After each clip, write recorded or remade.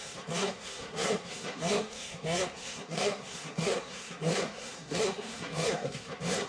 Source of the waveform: remade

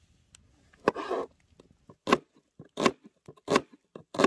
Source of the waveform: recorded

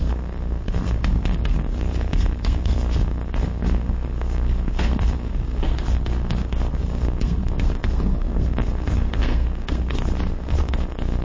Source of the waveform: remade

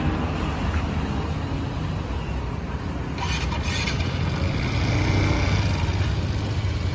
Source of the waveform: recorded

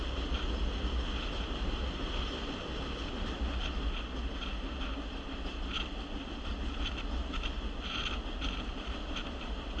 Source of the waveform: recorded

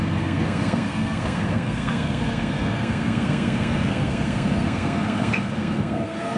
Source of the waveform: remade